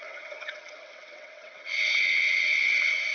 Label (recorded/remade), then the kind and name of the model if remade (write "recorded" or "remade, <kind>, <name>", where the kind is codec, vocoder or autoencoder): remade, vocoder, WaveNeXt